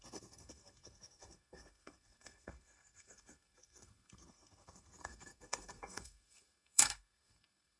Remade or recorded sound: remade